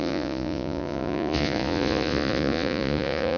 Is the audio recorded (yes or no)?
no